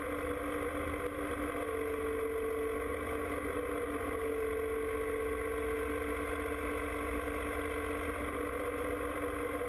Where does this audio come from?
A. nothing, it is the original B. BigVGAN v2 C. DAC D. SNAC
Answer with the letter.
A